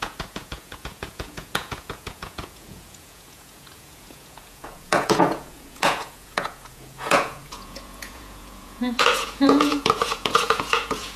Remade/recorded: remade